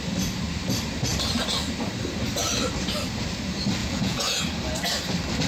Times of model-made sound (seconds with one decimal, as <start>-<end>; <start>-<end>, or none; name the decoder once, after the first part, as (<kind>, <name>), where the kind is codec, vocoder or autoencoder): 3.8-4.4 (vocoder, Vocos)